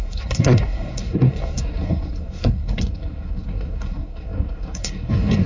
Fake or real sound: fake